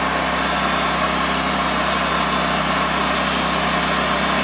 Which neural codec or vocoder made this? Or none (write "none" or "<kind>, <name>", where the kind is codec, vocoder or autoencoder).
none